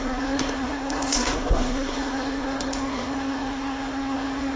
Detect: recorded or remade remade